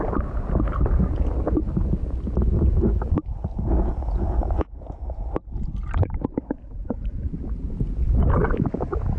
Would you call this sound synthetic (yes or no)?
no